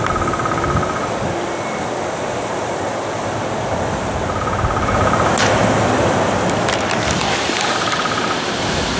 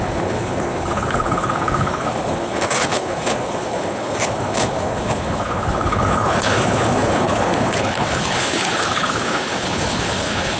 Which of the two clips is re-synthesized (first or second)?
second